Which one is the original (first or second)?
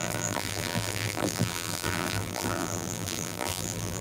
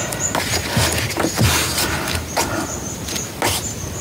second